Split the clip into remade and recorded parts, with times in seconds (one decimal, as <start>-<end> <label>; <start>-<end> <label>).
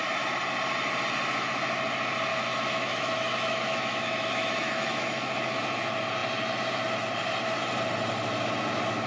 0.0-2.3 recorded; 2.3-5.6 remade; 5.6-9.1 recorded